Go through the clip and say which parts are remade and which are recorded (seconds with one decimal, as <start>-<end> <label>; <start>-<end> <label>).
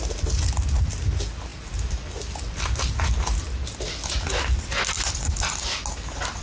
0.0-6.4 recorded